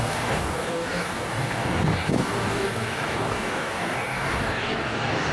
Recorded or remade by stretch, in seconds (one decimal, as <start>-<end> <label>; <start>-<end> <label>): 0.0-5.3 remade